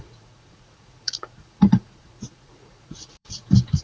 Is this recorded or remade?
remade